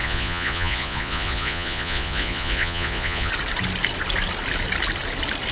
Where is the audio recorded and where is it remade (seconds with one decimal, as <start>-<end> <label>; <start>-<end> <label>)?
0.0-3.3 remade; 3.3-5.5 recorded